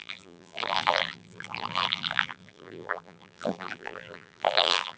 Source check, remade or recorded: remade